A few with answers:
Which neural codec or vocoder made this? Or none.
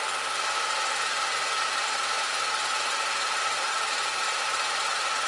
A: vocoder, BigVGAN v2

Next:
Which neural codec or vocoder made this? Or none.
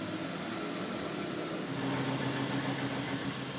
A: none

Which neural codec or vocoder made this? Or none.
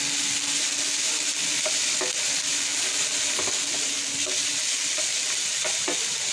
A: vocoder, BigVGAN v2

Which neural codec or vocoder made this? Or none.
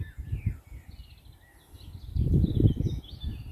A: none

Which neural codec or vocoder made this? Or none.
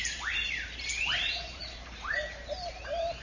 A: vocoder, BigVGAN v2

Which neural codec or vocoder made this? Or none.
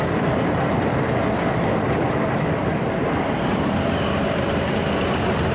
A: vocoder, BigVGAN v2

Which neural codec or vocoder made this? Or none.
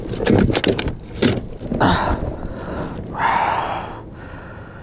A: none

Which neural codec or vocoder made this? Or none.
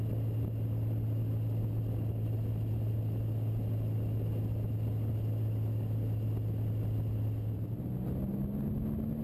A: none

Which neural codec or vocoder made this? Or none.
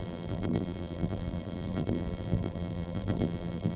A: vocoder, BigVGAN v2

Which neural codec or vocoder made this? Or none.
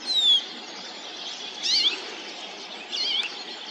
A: none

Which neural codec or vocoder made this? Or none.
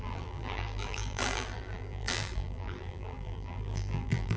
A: vocoder, BigVGAN v2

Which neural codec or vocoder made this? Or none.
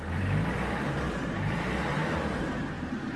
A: vocoder, BigVGAN v2